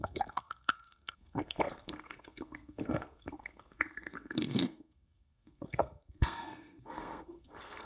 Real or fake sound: fake